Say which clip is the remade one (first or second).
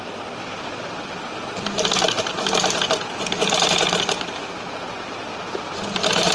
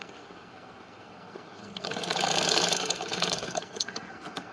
second